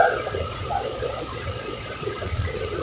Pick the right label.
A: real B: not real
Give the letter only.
B